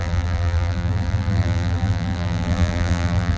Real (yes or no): no